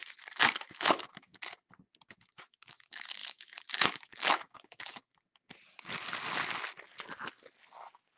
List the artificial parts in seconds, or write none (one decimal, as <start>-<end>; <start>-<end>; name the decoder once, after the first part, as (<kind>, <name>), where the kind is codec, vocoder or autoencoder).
0.6-1.3 (autoencoder, DAC-VAE); 2.4-5.1